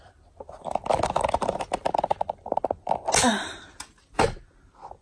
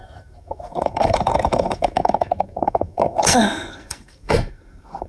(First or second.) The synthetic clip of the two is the second